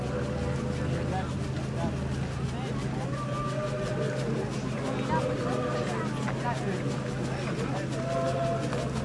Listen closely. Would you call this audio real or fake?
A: real